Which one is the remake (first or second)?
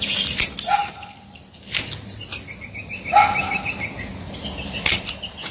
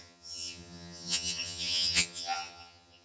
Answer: second